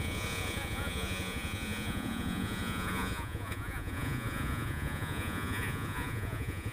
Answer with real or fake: fake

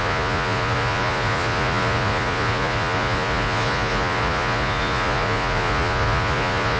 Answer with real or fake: fake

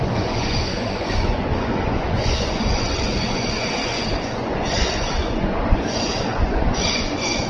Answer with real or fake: fake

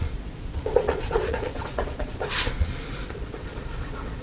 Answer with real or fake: fake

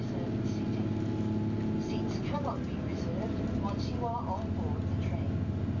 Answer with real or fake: real